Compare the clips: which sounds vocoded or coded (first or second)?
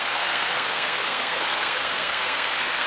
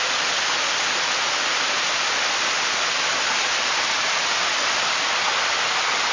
first